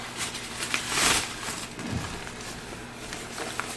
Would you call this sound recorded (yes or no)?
yes